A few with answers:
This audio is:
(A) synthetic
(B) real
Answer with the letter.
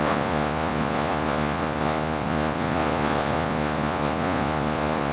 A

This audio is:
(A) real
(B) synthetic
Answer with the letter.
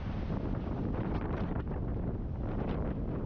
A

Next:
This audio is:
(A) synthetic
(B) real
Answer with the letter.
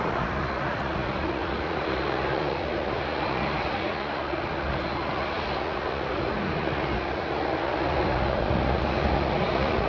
A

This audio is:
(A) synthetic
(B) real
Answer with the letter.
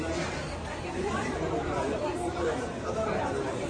B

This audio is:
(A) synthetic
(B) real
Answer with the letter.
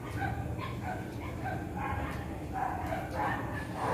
B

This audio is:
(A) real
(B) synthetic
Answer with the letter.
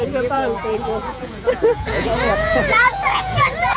B